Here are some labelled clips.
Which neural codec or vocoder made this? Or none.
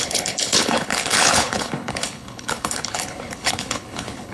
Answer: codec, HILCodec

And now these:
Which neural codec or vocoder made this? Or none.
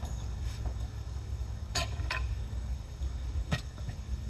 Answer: codec, DAC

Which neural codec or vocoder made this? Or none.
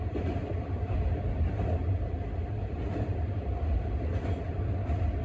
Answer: none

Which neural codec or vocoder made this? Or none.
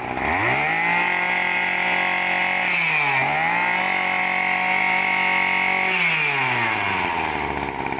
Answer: none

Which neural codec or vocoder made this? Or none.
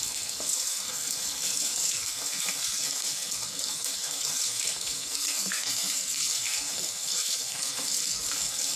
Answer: codec, SNAC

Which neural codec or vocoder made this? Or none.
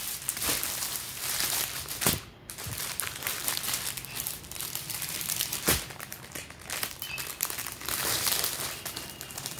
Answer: vocoder, BigVGAN v2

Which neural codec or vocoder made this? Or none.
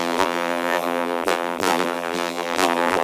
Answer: vocoder, BigVGAN v2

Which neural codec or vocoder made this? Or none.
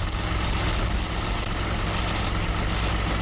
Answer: none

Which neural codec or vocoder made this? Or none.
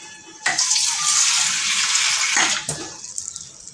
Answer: none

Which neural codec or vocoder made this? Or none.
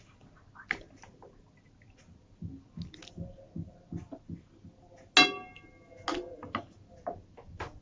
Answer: none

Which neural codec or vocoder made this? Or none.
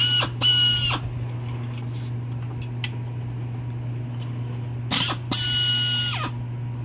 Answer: none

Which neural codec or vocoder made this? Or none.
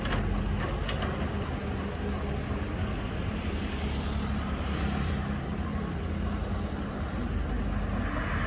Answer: none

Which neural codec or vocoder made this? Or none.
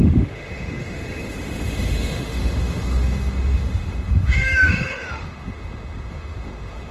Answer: autoencoder, DAC-VAE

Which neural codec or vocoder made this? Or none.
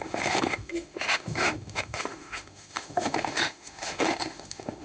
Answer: autoencoder, DAC-VAE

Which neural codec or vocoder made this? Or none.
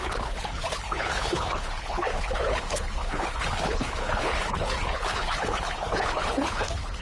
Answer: codec, HILCodec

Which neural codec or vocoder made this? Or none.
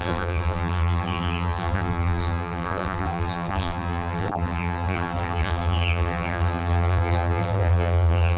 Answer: vocoder, BigVGAN v2